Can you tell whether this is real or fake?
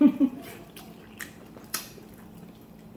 fake